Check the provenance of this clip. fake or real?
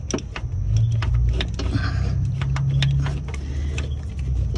real